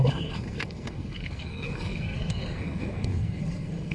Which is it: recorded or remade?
remade